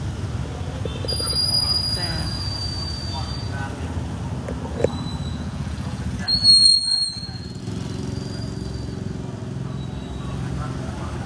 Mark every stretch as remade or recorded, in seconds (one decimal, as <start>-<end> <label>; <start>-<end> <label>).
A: 0.0-5.3 recorded; 5.3-6.0 remade; 6.0-6.6 recorded; 6.6-7.6 remade; 7.6-11.3 recorded